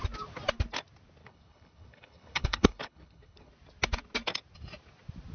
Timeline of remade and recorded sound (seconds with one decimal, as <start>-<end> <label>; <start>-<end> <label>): 0.0-1.2 recorded; 1.2-3.5 remade; 3.5-5.3 recorded